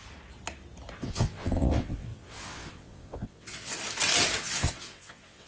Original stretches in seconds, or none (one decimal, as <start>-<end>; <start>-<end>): 0.0-1.0; 3.7-4.4